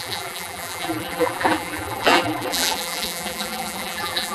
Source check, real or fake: fake